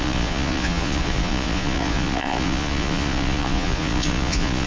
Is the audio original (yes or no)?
no